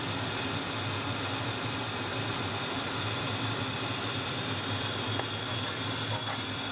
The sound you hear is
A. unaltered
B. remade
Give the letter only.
A